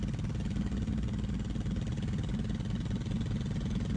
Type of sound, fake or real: real